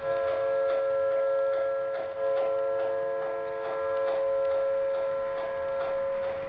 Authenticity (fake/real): real